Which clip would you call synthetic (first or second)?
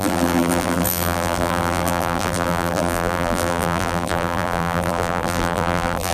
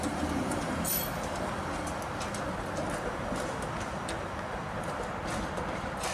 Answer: first